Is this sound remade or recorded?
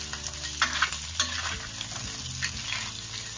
recorded